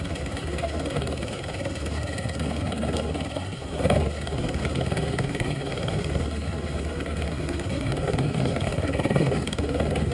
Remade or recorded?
remade